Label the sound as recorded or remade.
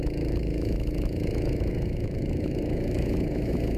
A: remade